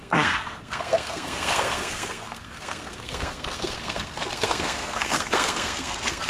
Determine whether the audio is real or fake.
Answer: fake